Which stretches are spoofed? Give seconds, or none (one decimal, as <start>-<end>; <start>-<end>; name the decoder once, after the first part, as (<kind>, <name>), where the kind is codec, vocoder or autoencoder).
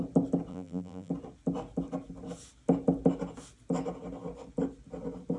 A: 0.5-1.1 (vocoder, BigVGAN v2)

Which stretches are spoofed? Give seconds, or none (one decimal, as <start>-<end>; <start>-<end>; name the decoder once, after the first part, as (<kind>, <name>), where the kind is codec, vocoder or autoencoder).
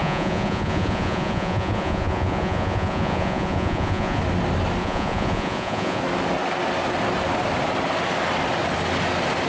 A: 0.0-4.2 (vocoder, Vocos); 4.8-6.0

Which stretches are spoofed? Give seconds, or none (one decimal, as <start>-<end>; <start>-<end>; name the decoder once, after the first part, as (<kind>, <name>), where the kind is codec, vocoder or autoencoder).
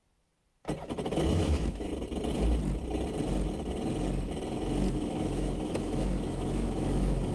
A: 1.1-1.9 (autoencoder, DAC-VAE); 4.9-7.3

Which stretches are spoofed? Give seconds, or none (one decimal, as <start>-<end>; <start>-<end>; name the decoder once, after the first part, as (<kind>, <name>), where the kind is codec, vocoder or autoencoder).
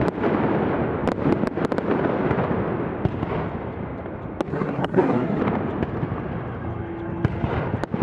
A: 4.5-5.4 (codec, SNAC)